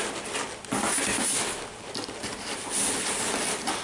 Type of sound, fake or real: real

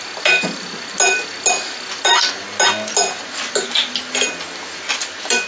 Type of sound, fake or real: real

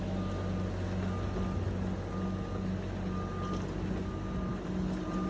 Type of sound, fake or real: real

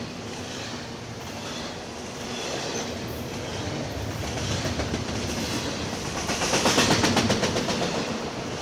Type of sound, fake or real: real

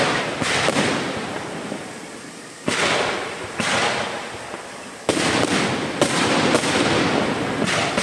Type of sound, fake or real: real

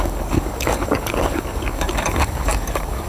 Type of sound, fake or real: fake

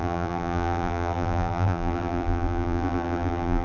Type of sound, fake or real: fake